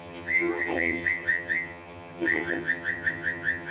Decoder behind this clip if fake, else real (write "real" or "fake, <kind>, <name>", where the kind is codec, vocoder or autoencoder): fake, vocoder, HiFi-GAN